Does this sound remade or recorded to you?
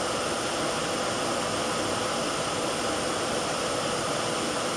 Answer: recorded